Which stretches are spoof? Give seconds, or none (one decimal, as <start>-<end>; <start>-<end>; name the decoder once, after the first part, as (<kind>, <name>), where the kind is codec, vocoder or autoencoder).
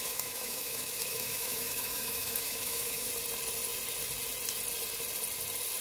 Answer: 0.0-3.1 (autoencoder, DAC-VAE)